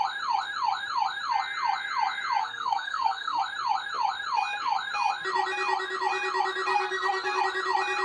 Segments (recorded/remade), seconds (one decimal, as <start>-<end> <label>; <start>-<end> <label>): 0.0-2.4 recorded; 2.4-3.4 remade; 3.4-6.7 recorded; 6.7-7.4 remade; 7.4-8.0 recorded